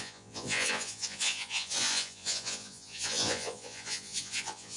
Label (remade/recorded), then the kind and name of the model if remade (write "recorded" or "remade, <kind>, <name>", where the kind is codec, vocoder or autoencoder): remade, vocoder, Vocos